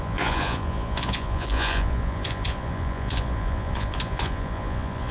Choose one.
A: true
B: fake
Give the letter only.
B